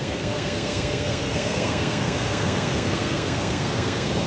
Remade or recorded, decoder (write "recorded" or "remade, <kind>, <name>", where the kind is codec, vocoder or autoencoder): remade, codec, SNAC